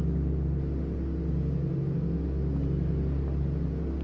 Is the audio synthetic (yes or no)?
no